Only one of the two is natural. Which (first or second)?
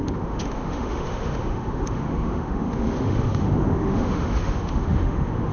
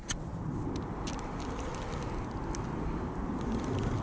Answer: second